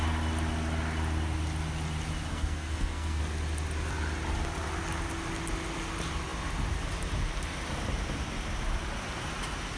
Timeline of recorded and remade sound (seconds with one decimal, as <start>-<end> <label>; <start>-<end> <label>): 0.0-2.3 recorded; 2.3-3.2 remade; 3.2-9.8 recorded